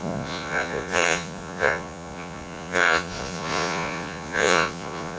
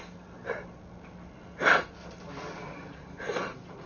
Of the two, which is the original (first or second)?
second